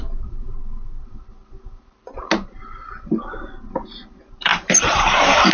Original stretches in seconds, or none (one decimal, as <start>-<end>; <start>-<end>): 0.0-4.5